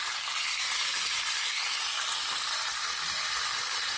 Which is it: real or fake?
real